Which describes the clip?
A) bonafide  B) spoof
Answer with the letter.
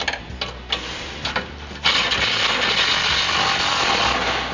A